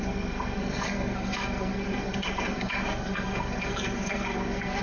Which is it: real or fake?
fake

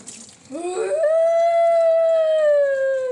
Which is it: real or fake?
real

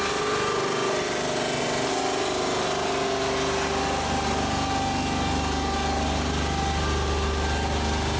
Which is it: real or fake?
real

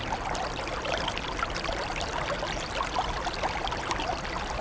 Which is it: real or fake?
real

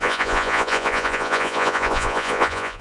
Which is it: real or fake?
fake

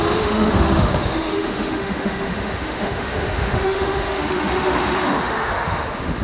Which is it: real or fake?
fake